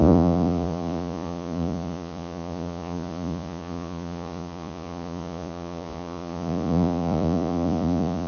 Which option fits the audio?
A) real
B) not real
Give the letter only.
B